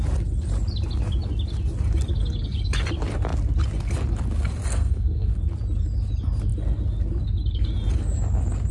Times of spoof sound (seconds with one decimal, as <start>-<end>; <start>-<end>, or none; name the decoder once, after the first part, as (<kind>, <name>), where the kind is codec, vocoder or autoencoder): 4.7-5.4 (codec, SNAC)